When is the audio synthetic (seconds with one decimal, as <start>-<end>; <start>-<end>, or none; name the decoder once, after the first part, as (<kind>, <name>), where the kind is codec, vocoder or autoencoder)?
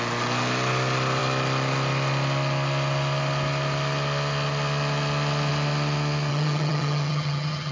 6.3-7.7 (vocoder, HiFi-GAN)